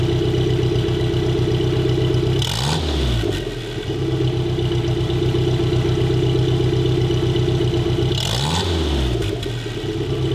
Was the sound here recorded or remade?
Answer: recorded